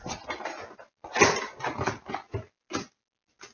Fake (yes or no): no